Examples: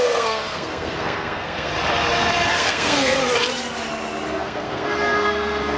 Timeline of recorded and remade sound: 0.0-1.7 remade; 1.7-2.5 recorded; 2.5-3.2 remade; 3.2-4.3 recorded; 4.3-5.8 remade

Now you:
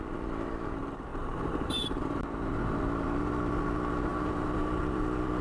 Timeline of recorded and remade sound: 0.0-1.1 recorded; 1.1-2.8 remade; 2.8-4.1 recorded; 4.1-4.8 remade; 4.8-5.4 recorded

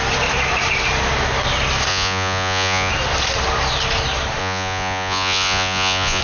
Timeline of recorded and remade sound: 0.0-1.9 recorded; 1.9-2.9 remade; 2.9-4.4 recorded; 4.4-6.2 remade

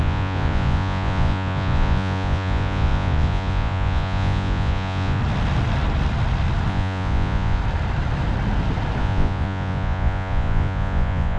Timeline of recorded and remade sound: 0.0-5.2 remade; 5.2-6.7 recorded; 6.7-7.6 remade; 7.6-9.0 recorded; 9.0-11.4 remade

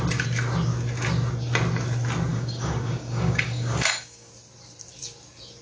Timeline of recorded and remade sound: 0.0-2.3 recorded; 2.3-4.3 remade; 4.3-5.6 recorded

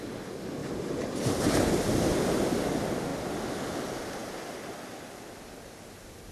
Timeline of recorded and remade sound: 0.0-0.6 recorded; 0.6-1.7 remade; 1.7-6.3 recorded